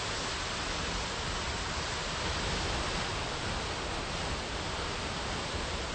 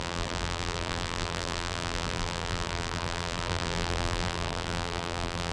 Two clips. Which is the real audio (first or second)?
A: first